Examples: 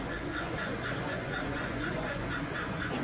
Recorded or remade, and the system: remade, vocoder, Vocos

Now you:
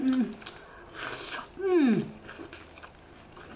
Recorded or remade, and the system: recorded